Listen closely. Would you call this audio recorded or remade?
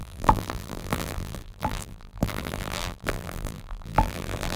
remade